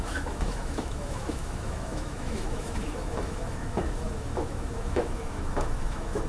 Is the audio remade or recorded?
remade